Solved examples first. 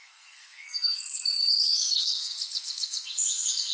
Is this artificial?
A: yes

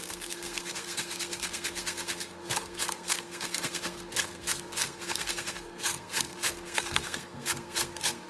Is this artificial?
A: yes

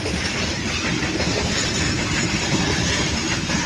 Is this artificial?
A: no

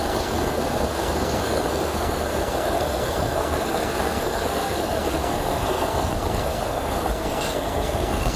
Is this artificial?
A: yes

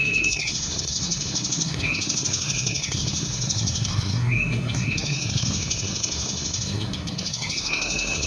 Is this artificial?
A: yes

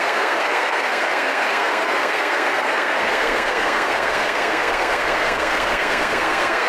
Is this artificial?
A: yes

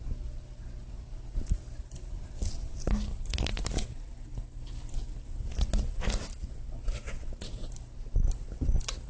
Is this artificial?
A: no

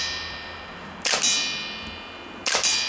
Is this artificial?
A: no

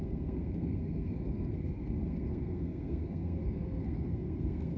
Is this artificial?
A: yes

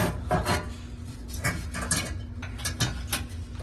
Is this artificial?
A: no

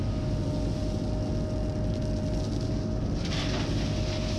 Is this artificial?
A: no